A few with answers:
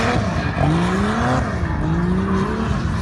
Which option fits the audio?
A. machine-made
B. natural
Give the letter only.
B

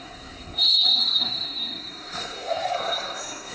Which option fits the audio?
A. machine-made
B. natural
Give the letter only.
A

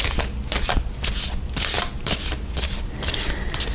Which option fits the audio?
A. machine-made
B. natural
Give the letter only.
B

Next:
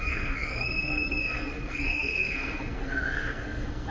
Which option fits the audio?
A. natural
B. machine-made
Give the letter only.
B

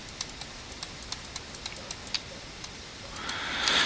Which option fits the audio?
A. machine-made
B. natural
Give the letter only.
B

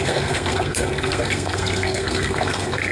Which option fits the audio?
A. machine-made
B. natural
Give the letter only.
A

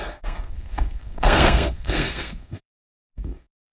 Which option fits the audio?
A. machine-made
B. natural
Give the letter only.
A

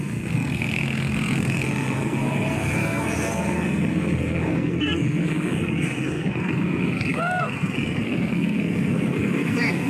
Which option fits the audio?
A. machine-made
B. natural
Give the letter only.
A